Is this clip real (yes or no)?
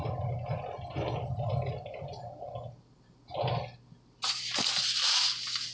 yes